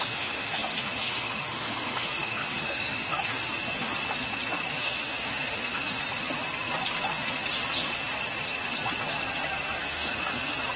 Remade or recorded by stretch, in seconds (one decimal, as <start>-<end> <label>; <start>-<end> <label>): 0.0-3.9 remade; 3.9-4.7 recorded; 4.7-6.0 remade; 6.0-9.8 recorded; 9.8-10.8 remade